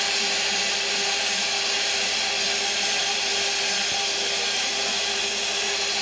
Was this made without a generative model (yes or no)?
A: yes